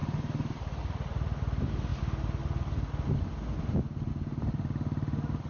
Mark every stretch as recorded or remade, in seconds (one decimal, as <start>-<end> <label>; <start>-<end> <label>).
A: 0.0-5.5 recorded